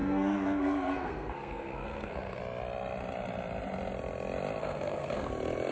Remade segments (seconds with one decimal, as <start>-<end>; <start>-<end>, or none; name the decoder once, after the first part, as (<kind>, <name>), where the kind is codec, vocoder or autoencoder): 0.0-2.4 (codec, SNAC); 4.6-5.3